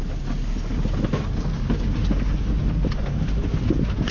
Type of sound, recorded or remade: recorded